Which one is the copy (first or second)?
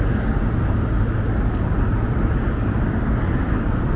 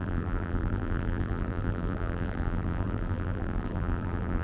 second